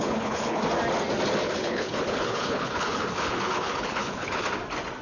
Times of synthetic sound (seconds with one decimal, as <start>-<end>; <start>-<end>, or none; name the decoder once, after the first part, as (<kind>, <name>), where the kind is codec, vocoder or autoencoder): 0.0-0.6 (codec, HILCodec); 1.4-4.4